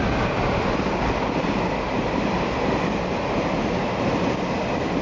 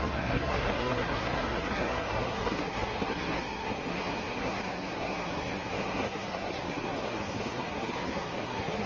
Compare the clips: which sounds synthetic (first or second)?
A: second